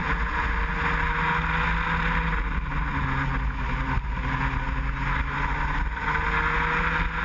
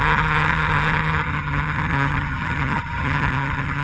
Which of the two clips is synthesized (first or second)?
second